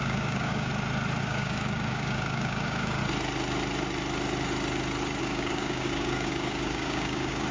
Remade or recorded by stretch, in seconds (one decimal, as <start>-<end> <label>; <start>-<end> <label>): 0.0-0.7 remade; 0.7-1.2 recorded; 1.2-3.0 remade; 3.0-5.2 recorded; 5.2-7.5 remade